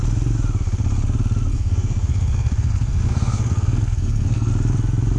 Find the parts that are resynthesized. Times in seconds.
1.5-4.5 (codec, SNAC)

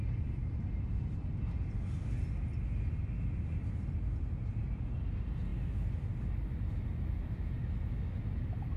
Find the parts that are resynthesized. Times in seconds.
none

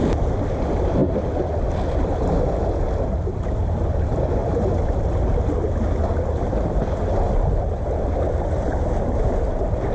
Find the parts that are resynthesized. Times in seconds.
none

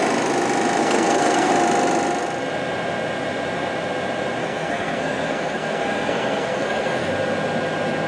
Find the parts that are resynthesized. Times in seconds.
0.8-1.5 (codec, SNAC); 4.4-7.1